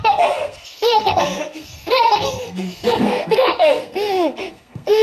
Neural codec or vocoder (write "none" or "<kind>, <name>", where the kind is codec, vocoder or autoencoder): codec, SNAC